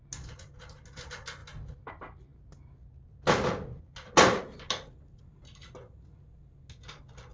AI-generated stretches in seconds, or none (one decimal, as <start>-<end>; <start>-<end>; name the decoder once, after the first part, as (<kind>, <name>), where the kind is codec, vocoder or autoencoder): none